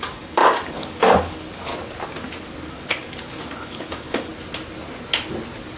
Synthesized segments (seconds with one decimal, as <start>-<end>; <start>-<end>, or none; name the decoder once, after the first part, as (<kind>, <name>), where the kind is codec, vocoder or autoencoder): 0.0-1.7 (codec, DAC); 2.7-4.3